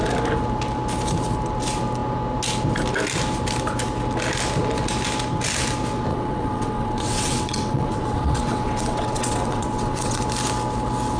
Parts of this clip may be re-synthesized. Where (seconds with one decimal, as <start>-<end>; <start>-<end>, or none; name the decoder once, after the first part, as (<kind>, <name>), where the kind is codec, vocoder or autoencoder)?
6.1-10.2 (vocoder, WaveNeXt)